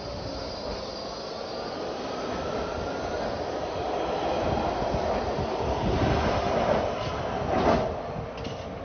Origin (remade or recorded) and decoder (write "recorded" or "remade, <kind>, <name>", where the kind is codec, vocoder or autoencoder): recorded